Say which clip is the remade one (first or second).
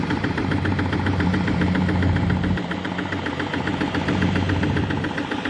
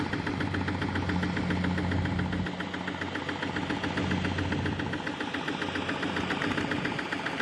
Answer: first